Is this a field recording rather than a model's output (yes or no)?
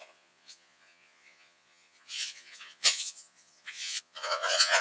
no